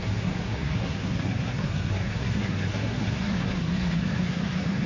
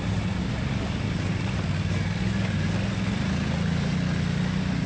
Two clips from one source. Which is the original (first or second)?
second